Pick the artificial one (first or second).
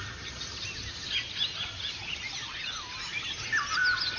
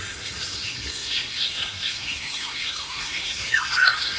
second